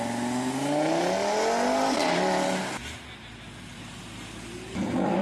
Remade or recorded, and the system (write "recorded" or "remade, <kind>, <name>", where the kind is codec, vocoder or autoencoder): recorded